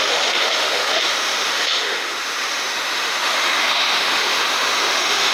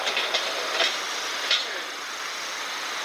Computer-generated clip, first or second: first